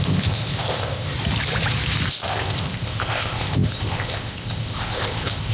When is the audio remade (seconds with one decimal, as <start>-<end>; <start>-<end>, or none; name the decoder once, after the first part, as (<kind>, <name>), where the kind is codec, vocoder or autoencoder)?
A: 0.0-1.1 (codec, ZipCodec); 2.1-5.5